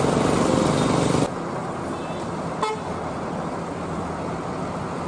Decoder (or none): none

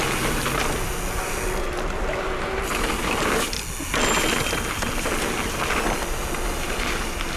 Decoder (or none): none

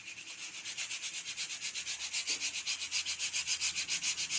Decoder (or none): none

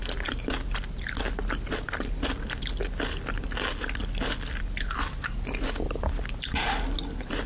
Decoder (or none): none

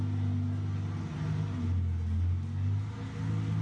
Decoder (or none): none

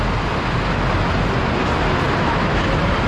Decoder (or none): none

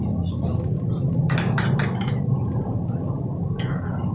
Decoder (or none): none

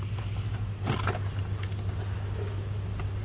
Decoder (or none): none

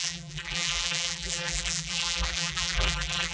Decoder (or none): vocoder, BigVGAN v2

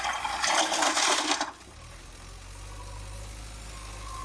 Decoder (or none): none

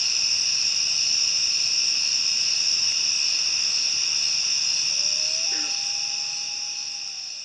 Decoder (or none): none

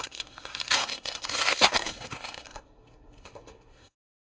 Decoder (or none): codec, SNAC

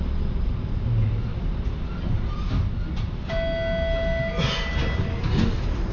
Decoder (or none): none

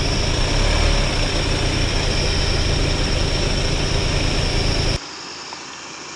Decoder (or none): none